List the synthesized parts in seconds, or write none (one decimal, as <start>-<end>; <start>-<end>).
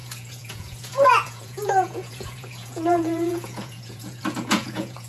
0.0-5.1